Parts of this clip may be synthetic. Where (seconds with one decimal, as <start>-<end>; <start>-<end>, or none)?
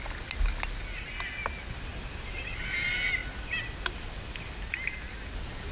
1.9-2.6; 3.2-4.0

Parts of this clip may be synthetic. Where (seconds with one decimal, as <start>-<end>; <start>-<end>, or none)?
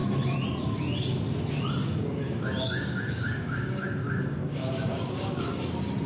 1.8-5.5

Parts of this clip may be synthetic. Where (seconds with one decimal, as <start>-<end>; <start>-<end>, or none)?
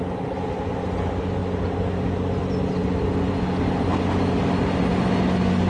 none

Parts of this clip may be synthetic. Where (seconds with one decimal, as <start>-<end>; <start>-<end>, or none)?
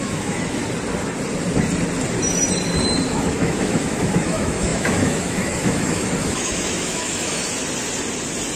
0.0-0.6; 3.1-7.4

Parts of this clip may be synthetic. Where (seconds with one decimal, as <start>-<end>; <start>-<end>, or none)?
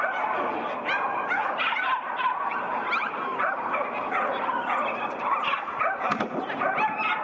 none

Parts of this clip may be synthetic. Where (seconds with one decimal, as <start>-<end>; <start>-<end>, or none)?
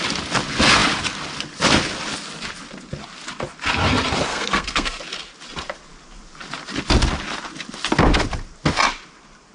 4.3-5.0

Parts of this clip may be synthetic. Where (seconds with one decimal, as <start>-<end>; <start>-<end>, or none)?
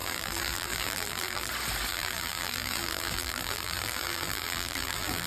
0.0-1.5; 1.9-5.3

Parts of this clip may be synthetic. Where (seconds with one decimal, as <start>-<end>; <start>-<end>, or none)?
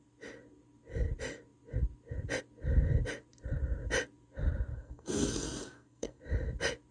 4.7-6.2